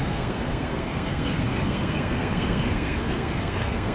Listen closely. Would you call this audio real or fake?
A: fake